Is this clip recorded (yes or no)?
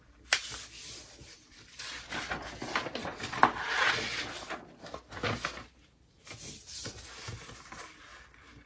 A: yes